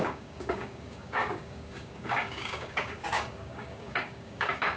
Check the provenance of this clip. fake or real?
fake